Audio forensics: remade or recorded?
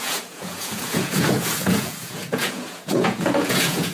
remade